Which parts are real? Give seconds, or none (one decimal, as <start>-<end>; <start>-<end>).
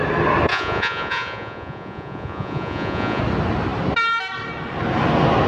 0.0-0.5; 3.2-5.5